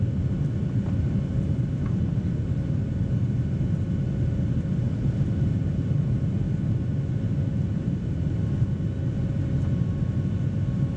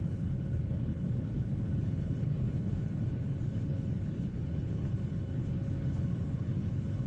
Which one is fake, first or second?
second